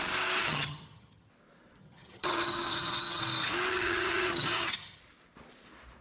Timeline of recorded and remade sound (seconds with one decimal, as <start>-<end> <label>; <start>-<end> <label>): 0.0-0.4 recorded; 0.4-1.3 remade; 1.3-1.8 recorded; 1.8-3.2 remade; 3.2-3.7 recorded; 3.7-5.0 remade; 5.0-6.0 recorded